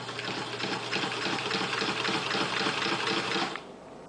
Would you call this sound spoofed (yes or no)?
no